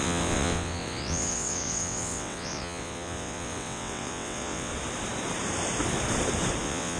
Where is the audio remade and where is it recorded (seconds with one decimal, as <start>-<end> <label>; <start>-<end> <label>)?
0.0-4.7 remade; 4.7-6.6 recorded; 6.6-7.0 remade